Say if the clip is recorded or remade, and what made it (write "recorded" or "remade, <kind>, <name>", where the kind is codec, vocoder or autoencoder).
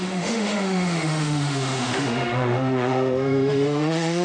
remade, autoencoder, DAC-VAE